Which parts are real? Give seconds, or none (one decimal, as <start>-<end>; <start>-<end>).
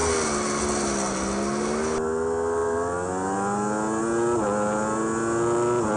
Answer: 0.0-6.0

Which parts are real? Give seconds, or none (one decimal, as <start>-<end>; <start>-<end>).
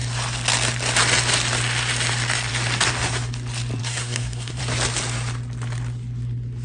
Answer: 0.0-3.8; 4.6-6.6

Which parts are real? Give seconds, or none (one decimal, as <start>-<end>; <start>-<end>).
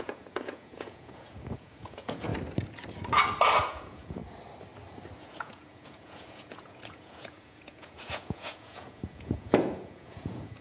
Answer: 2.3-3.6; 4.2-5.2